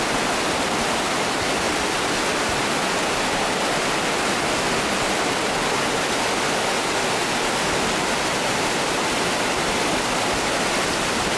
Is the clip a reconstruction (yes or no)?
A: no